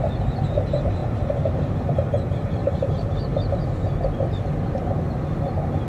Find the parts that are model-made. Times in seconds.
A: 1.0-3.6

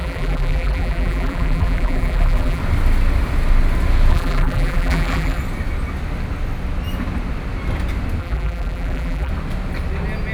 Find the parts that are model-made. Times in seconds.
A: 0.0-2.6; 4.1-5.4; 8.2-9.3